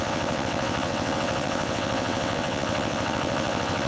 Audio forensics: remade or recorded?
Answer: remade